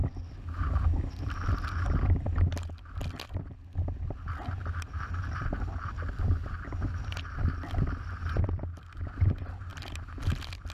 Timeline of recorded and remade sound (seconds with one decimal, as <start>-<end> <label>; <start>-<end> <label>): 0.0-10.7 recorded